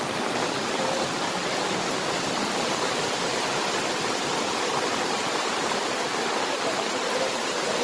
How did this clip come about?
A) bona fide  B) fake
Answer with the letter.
A